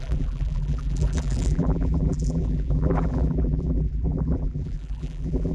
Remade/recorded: remade